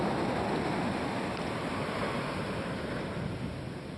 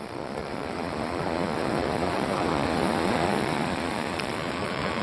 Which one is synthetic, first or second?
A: second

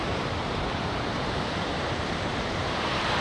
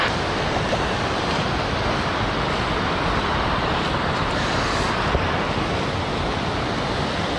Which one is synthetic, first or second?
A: first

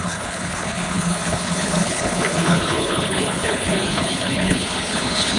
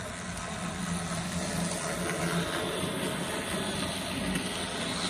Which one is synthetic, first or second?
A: first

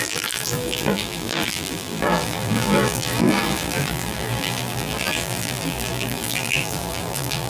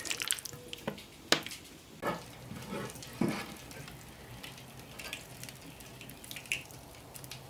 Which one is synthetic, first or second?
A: first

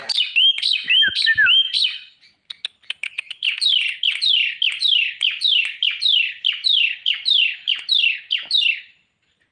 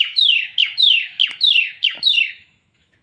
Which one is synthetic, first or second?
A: second